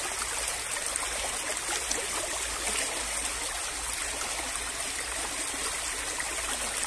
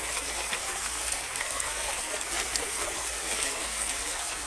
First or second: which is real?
first